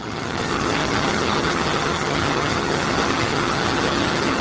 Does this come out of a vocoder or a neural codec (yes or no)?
yes